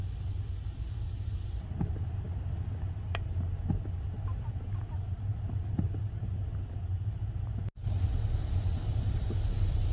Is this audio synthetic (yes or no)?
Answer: no